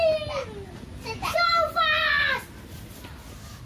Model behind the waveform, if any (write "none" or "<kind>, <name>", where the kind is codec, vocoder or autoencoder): none